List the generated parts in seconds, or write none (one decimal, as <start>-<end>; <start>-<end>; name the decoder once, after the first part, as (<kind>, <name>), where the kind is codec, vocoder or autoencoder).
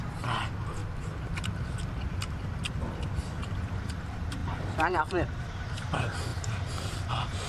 0.0-0.8 (vocoder, BigVGAN v2); 3.1-7.5